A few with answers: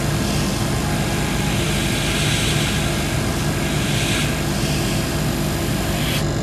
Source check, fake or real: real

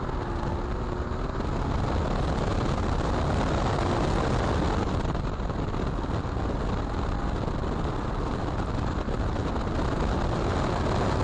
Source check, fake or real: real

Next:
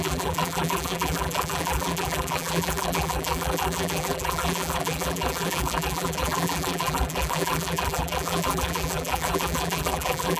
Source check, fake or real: fake